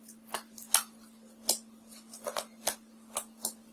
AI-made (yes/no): no